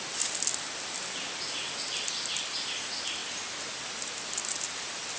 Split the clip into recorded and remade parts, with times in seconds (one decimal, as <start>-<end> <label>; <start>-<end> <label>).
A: 0.0-5.2 recorded